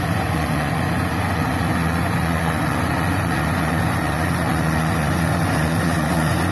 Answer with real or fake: fake